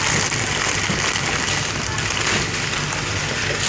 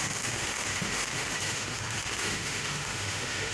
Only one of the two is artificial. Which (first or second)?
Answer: second